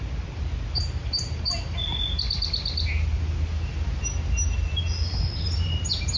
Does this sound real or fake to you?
real